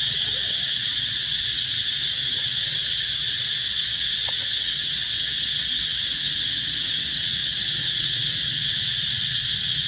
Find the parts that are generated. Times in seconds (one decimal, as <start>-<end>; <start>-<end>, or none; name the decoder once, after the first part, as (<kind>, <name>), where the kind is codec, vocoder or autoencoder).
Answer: 0.0-9.9 (vocoder, WaveNeXt)